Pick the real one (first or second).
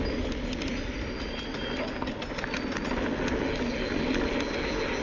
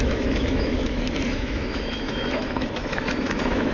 first